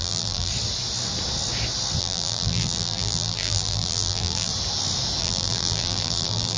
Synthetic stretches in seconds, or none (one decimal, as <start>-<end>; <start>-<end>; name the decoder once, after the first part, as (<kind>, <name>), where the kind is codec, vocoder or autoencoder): 0.0-0.5 (vocoder, BigVGAN v2); 2.0-4.5; 5.2-6.6